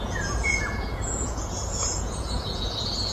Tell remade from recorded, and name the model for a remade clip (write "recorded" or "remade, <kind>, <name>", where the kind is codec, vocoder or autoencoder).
remade, vocoder, Vocos